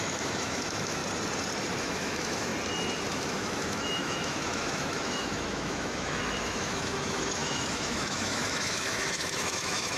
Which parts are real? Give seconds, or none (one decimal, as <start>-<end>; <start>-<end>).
1.0-1.8; 2.5-3.1